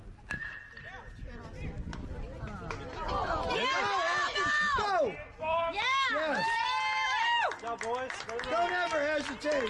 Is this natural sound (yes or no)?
yes